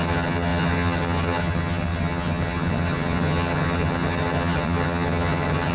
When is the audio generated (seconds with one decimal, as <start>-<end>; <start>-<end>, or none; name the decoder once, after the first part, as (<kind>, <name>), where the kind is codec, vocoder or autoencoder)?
0.0-5.7 (vocoder, HiFi-GAN)